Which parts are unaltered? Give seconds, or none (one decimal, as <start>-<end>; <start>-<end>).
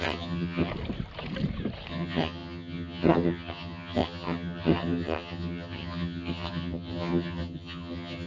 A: 0.7-1.9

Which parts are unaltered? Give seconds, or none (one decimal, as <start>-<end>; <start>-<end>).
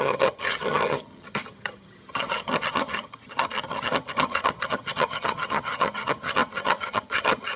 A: none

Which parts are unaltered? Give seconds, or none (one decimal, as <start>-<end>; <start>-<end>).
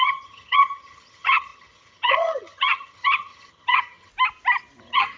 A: 4.1-4.8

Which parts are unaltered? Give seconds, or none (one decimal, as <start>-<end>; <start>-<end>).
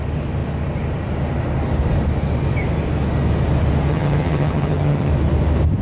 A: 0.0-3.9; 5.1-5.8